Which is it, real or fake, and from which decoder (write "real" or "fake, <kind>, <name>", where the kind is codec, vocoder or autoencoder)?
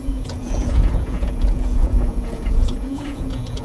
fake, vocoder, Vocos